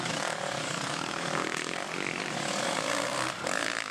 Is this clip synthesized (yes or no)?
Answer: yes